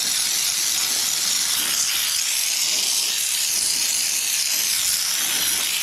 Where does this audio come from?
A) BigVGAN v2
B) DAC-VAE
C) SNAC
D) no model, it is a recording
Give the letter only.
D